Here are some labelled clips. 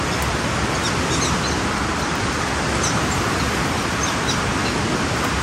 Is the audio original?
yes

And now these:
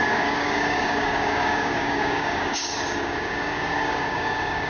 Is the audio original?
no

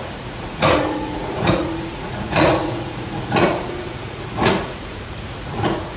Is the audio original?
no